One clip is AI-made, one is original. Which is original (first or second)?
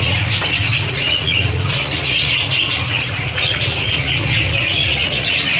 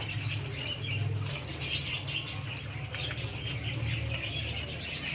second